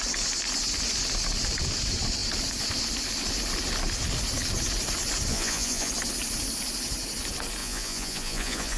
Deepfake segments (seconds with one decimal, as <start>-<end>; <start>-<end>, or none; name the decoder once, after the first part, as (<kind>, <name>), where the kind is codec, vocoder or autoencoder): 5.3-5.9 (vocoder, Vocos); 7.6-8.8